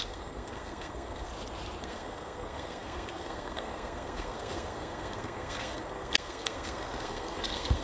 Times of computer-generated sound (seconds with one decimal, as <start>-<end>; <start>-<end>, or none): 0.0-1.3; 1.8-7.8